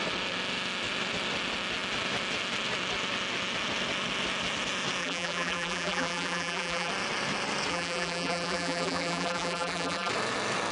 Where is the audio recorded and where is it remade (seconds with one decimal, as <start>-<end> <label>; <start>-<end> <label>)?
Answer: 0.0-5.0 recorded; 5.0-6.9 remade; 6.9-7.7 recorded; 7.7-10.1 remade; 10.1-10.7 recorded